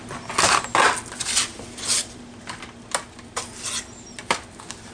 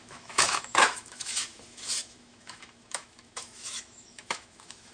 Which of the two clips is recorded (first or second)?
first